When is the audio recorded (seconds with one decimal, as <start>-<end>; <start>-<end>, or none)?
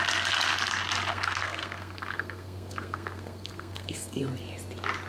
0.0-1.1; 4.2-5.1